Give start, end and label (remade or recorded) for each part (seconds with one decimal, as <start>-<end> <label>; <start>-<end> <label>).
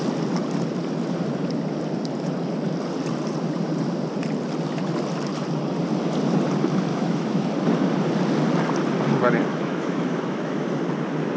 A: 0.0-6.9 recorded; 6.9-7.5 remade; 7.5-9.5 recorded; 9.5-10.6 remade; 10.6-11.4 recorded